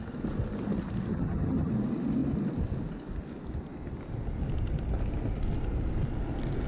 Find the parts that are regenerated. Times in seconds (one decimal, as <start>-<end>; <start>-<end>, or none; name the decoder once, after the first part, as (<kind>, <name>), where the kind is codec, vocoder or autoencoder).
1.1-1.7 (vocoder, HiFi-GAN)